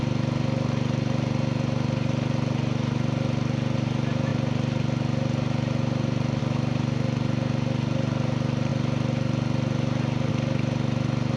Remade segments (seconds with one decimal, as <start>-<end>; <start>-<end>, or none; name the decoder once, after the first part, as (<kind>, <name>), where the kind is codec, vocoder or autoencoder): none